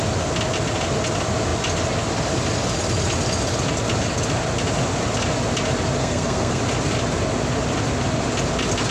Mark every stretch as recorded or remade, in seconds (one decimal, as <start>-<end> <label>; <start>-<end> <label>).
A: 0.0-6.0 recorded; 6.0-6.6 remade; 6.6-8.9 recorded